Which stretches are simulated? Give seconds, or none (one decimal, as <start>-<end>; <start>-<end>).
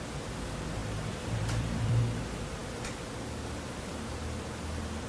0.8-2.0